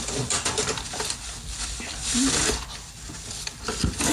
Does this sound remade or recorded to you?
recorded